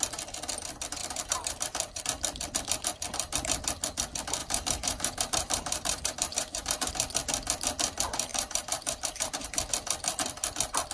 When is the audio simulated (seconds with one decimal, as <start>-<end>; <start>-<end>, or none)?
1.0-2.0; 4.4-6.9; 8.3-9.7